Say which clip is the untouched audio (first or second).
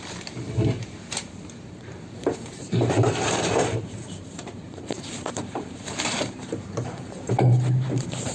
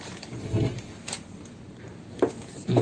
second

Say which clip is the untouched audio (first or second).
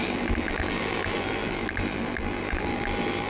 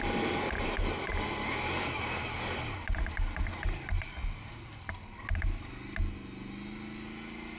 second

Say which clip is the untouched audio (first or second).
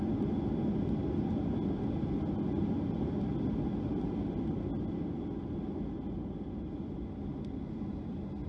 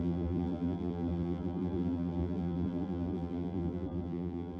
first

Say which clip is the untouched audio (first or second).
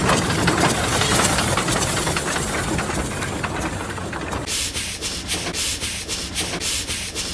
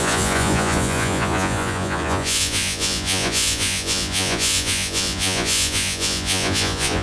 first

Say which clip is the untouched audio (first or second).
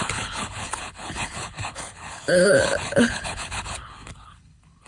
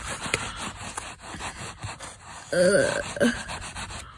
second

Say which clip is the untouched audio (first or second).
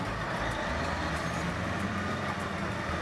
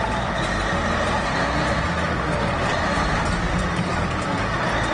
second